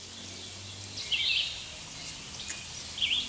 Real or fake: real